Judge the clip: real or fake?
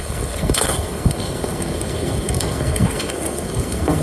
fake